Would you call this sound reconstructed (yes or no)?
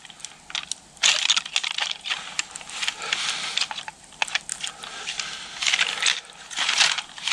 no